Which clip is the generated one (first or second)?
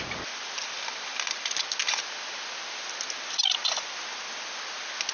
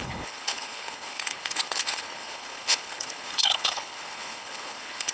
second